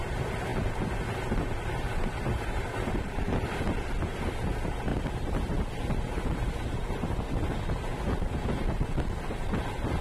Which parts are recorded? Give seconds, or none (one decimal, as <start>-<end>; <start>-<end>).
0.0-10.0